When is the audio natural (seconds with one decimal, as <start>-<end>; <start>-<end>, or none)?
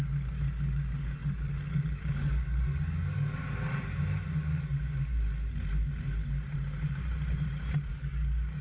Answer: 3.4-7.9